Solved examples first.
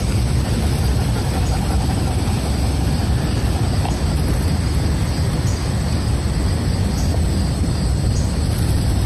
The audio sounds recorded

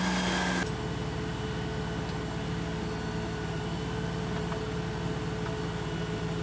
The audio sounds recorded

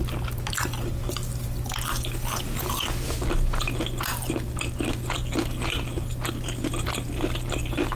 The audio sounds recorded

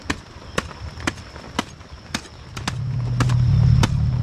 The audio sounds recorded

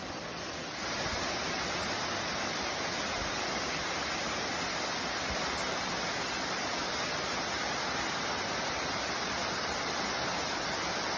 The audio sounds recorded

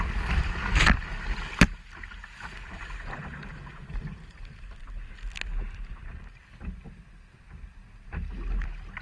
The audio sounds recorded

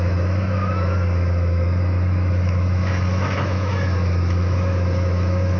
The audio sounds remade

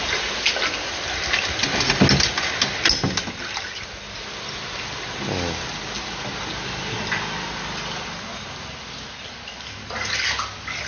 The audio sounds recorded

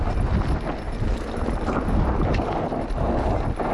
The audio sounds recorded